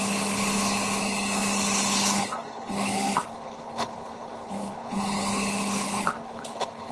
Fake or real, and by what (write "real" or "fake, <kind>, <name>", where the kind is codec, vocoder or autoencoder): fake, codec, HILCodec